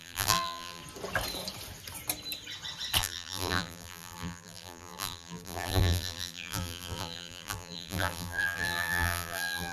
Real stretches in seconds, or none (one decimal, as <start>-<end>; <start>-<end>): 0.8-3.0

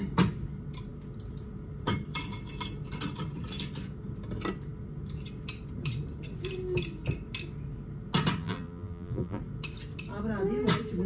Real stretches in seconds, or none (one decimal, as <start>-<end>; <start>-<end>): 0.0-8.4; 9.4-11.1